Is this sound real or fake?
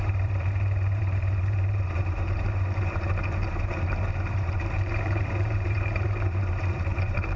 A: fake